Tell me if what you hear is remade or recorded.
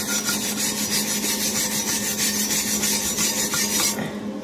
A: recorded